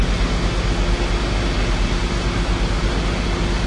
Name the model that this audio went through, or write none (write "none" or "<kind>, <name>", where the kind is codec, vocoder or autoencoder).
none